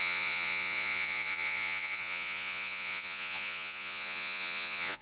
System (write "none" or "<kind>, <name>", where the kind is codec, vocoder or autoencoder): vocoder, Vocos